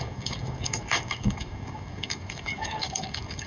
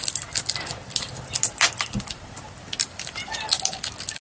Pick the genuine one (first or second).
second